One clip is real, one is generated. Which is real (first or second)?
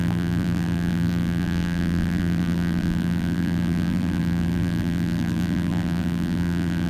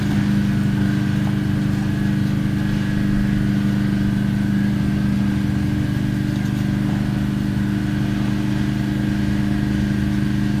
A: second